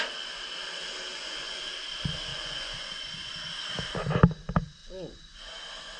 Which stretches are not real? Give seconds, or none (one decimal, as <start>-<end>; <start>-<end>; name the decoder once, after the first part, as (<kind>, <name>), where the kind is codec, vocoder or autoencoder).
1.1-1.6 (vocoder, Vocos); 2.3-3.3; 4.8-5.5

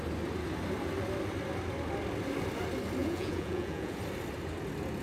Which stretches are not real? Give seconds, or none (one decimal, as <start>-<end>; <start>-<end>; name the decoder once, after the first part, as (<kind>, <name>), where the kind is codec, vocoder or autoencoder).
3.0-4.0 (vocoder, Vocos)

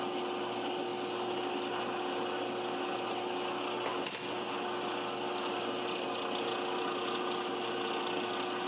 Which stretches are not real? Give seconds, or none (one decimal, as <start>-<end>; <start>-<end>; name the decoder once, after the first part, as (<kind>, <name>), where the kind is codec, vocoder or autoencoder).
none

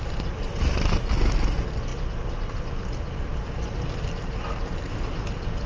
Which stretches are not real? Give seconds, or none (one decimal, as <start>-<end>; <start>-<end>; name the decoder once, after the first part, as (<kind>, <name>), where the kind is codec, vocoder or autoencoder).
none

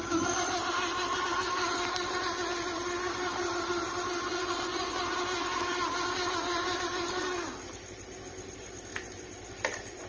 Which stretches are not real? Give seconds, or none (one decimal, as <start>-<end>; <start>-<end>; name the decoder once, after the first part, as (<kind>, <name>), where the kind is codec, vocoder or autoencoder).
4.3-4.9 (vocoder, Vocos)

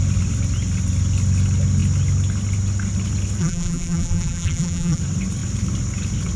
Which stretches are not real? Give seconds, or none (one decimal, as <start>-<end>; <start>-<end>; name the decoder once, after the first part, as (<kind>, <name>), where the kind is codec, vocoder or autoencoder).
3.4-5.0 (vocoder, BigVGAN v2)